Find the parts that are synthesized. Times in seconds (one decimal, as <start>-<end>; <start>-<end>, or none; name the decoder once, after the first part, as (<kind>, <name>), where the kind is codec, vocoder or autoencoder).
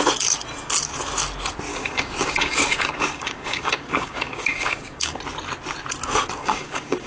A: 1.7-5.2 (codec, DAC); 6.4-7.1